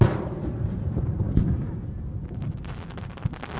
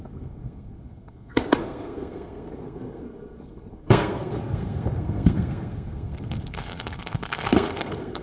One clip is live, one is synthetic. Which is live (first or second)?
first